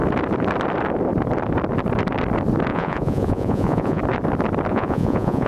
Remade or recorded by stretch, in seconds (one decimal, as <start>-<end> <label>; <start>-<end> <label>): 0.0-2.7 recorded; 2.7-4.0 remade; 4.0-4.7 recorded; 4.7-5.5 remade